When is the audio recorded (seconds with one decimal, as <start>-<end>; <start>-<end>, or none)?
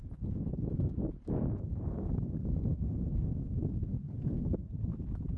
0.0-2.7; 3.6-4.0; 4.7-5.4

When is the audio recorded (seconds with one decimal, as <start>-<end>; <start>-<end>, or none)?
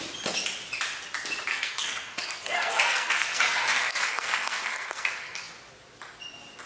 0.0-1.5; 5.5-6.7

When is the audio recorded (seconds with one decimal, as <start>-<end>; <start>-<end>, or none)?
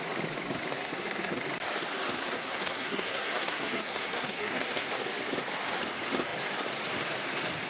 0.0-0.7; 1.4-2.2; 4.9-7.7